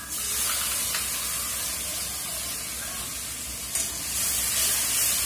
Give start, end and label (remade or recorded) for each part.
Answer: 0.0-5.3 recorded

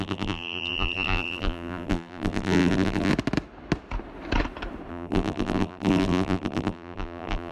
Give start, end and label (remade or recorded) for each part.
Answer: 0.0-3.1 remade; 3.1-4.9 recorded; 4.9-7.5 remade

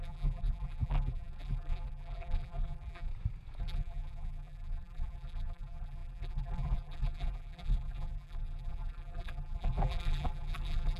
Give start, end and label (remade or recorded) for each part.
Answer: 0.0-3.1 remade; 3.1-3.6 recorded; 3.6-11.0 remade

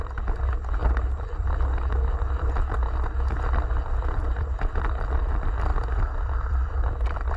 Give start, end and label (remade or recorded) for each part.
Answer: 0.0-0.8 recorded; 0.8-5.2 remade; 5.2-5.7 recorded; 5.7-7.4 remade

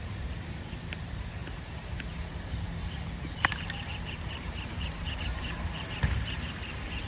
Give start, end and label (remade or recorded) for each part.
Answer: 0.0-7.1 remade

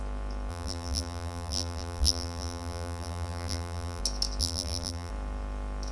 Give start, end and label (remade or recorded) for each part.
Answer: 0.0-0.5 recorded; 0.5-4.0 remade; 4.0-4.4 recorded; 4.4-5.1 remade; 5.1-5.9 recorded

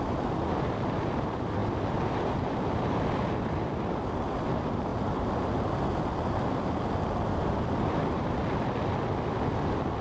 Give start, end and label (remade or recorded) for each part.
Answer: 0.0-4.9 remade; 4.9-7.8 recorded; 7.8-10.0 remade

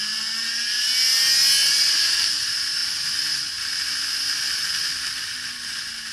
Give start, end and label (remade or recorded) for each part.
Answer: 0.0-1.6 recorded; 1.6-2.3 remade; 2.3-6.1 recorded